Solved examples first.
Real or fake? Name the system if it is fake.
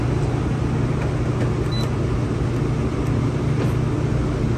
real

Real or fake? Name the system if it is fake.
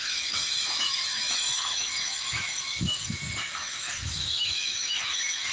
fake, autoencoder, DAC-VAE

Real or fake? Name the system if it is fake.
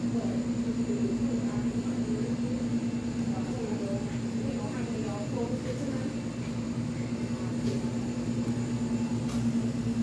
real